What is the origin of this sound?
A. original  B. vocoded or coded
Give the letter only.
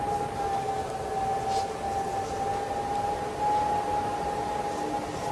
A